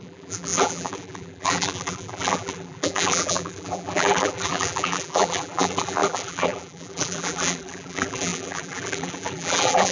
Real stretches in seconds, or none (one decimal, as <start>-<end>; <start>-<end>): none